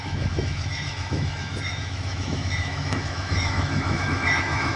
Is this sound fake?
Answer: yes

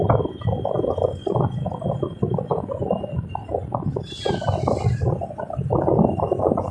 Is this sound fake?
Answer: no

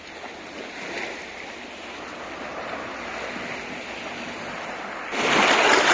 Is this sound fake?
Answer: no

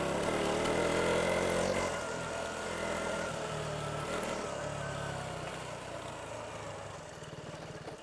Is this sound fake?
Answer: no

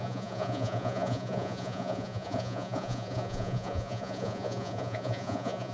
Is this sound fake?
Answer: yes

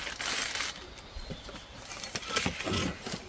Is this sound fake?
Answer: no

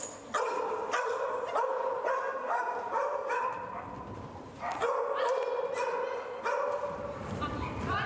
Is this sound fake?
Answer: no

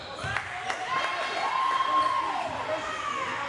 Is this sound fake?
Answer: no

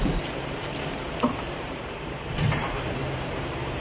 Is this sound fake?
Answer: yes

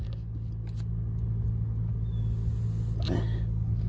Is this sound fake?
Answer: no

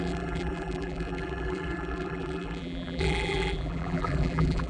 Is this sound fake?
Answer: yes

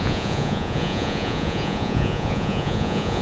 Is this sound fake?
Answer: yes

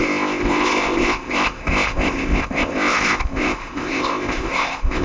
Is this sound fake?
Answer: yes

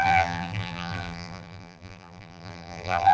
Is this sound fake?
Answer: yes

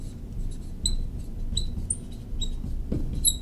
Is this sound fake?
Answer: no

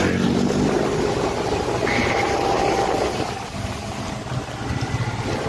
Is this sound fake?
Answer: no